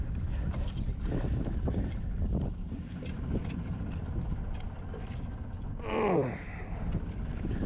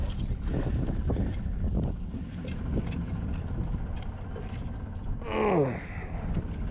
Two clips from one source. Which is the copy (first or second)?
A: first